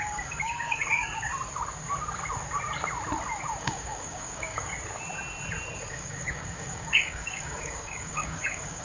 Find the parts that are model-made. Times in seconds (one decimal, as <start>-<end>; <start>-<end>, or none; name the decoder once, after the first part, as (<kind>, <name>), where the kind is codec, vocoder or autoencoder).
0.0-1.3 (codec, DAC); 3.6-4.7; 5.9-8.8